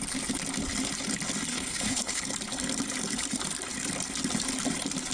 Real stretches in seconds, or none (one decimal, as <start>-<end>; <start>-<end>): 0.0-1.5; 2.2-5.1